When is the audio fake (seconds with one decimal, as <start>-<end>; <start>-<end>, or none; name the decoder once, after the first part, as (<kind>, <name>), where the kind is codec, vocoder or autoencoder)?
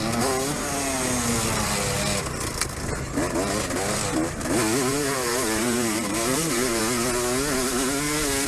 4.9-6.8 (vocoder, BigVGAN v2)